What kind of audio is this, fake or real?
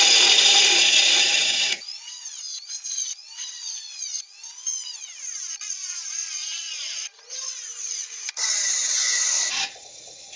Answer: fake